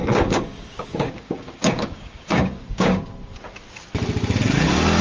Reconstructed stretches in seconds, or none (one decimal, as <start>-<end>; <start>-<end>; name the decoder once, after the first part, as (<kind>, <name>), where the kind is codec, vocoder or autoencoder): 0.0-3.0 (codec, DAC)